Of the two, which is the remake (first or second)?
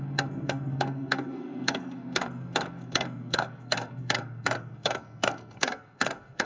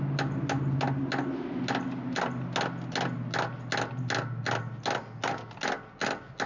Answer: first